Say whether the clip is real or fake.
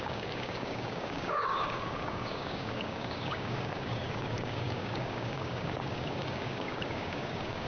fake